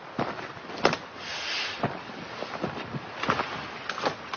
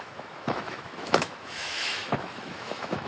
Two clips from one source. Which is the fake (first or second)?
second